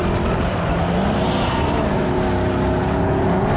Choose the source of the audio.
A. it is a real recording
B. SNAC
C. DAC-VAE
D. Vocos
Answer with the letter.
A